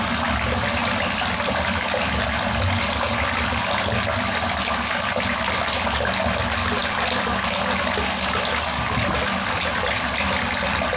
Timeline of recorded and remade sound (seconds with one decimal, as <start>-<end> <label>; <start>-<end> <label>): 0.0-0.8 recorded; 0.8-1.5 remade; 1.5-6.8 recorded; 6.8-7.5 remade; 7.5-9.0 recorded; 9.0-11.0 remade